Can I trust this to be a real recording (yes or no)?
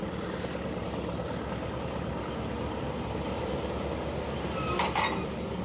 yes